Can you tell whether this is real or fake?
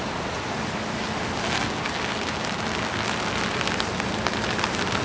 real